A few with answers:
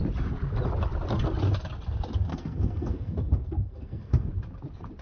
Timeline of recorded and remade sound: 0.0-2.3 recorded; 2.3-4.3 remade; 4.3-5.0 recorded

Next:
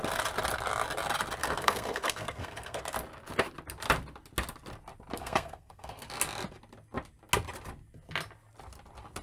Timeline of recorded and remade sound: 0.0-1.4 recorded; 1.4-2.8 remade; 2.8-5.2 recorded; 5.2-6.1 remade; 6.1-9.2 recorded

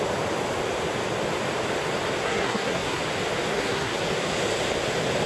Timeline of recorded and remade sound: 0.0-2.2 recorded; 2.2-3.0 remade; 3.0-3.5 recorded; 3.5-4.0 remade; 4.0-5.3 recorded

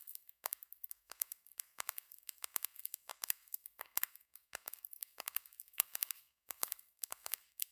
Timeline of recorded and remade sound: 0.0-7.7 remade

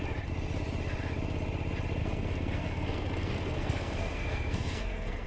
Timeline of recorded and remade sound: 0.0-2.0 recorded; 2.0-5.3 remade

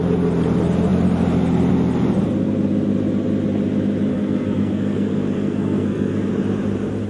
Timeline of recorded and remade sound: 0.0-4.1 recorded; 4.1-6.3 remade; 6.3-7.1 recorded

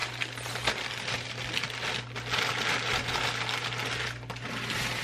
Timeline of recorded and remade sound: 0.0-5.0 recorded

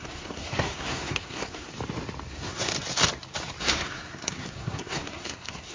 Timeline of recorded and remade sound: 0.0-1.7 remade; 1.7-2.3 recorded; 2.3-2.7 remade; 2.7-3.6 recorded; 3.6-5.7 remade